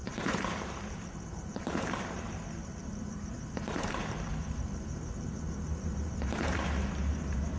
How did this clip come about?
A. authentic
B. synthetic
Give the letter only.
B